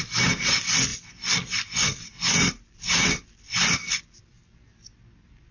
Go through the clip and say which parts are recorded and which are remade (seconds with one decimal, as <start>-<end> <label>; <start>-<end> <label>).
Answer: 0.0-0.9 recorded; 0.9-4.2 remade; 4.2-5.5 recorded